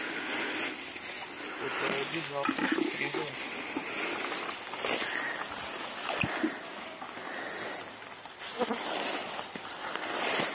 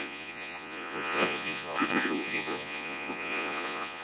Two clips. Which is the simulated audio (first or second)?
second